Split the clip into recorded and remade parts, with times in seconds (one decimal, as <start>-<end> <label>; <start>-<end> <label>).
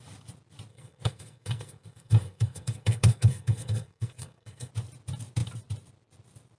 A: 0.0-0.7 recorded; 0.7-4.7 remade; 4.7-6.6 recorded